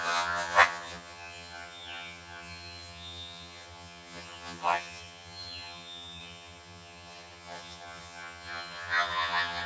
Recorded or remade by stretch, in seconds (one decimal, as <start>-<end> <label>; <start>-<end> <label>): 0.0-9.7 remade